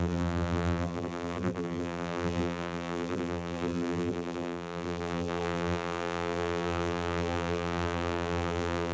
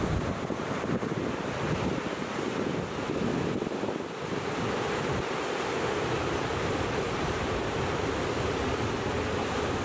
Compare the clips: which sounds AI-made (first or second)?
first